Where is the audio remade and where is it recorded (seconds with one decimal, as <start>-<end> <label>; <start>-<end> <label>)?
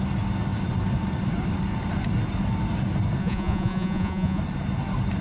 0.0-3.2 recorded; 3.2-4.4 remade; 4.4-5.2 recorded